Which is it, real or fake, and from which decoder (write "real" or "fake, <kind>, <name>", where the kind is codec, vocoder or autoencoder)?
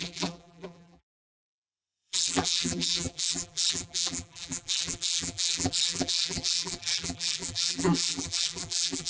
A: fake, vocoder, BigVGAN v2